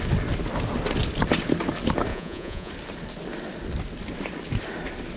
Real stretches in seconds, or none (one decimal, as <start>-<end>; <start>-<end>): 0.0-2.1; 2.7-5.2